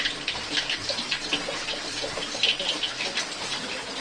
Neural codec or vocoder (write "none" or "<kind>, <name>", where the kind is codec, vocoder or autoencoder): none